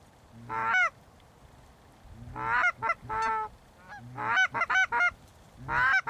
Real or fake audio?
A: real